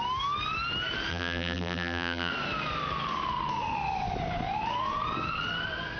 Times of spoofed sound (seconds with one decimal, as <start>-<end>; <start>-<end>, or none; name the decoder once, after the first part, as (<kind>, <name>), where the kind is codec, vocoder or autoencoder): 1.1-2.3 (vocoder, BigVGAN v2)

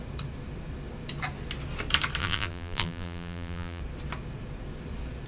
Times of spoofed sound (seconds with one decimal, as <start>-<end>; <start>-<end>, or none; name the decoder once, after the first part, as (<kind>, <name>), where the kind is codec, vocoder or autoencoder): 2.2-3.8 (vocoder, BigVGAN v2)

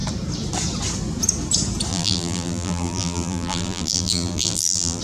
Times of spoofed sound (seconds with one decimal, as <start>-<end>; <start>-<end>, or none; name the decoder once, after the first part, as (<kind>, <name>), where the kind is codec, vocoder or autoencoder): 1.9-5.0 (vocoder, BigVGAN v2)

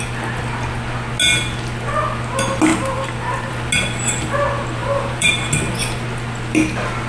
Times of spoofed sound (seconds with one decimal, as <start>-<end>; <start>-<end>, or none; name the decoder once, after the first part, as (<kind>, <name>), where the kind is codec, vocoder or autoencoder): 2.7-3.5 (vocoder, BigVGAN v2); 4.8-5.3

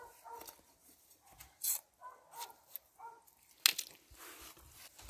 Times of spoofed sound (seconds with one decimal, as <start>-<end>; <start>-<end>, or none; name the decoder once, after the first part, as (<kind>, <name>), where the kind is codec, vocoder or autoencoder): 0.8-1.7 (vocoder, BigVGAN v2)

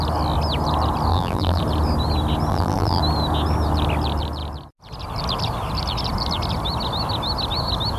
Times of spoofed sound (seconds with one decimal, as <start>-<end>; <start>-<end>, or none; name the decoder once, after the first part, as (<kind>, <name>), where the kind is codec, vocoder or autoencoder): 1.1-1.6 (vocoder, BigVGAN v2); 2.5-3.0

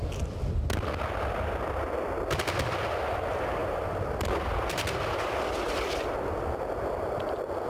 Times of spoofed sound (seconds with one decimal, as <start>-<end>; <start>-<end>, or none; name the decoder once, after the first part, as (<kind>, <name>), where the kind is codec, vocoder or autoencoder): 3.6-5.2 (vocoder, BigVGAN v2)